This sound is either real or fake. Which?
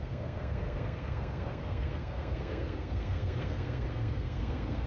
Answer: fake